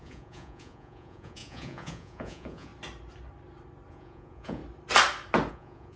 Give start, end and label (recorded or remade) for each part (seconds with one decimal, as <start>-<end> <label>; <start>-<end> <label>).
0.0-2.7 remade; 2.7-3.9 recorded; 3.9-4.6 remade; 4.6-5.5 recorded; 5.5-6.0 remade